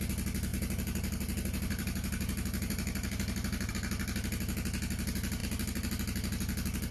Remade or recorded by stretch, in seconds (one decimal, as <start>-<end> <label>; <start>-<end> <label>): 0.0-0.5 recorded; 0.5-3.7 remade; 3.7-6.9 recorded